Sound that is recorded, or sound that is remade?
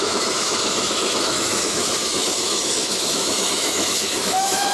remade